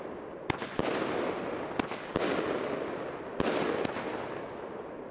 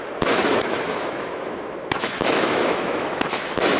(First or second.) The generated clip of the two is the second